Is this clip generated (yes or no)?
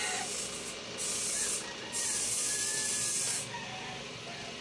yes